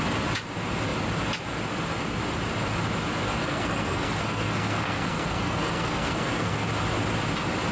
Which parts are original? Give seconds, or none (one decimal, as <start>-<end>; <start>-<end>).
0.0-3.4; 6.7-7.7